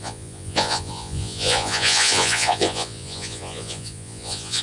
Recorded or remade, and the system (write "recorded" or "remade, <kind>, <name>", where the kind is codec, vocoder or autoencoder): remade, vocoder, Vocos